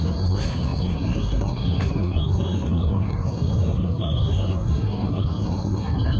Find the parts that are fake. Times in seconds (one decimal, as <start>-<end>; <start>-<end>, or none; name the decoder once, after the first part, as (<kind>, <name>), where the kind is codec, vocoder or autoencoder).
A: 0.0-6.2 (codec, SNAC)